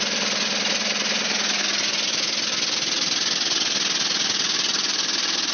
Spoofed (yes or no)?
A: no